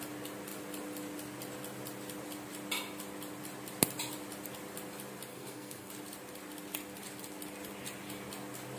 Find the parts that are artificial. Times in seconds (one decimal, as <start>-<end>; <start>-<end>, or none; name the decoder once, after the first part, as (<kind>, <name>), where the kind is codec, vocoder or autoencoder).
5.3-5.9 (codec, SNAC)